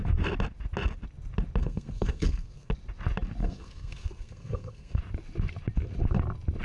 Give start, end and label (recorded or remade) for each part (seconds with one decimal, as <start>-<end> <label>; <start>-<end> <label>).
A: 0.0-1.6 recorded; 1.6-2.7 remade; 2.7-3.4 recorded; 3.4-5.0 remade; 5.0-6.6 recorded